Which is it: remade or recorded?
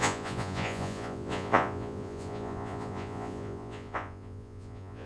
remade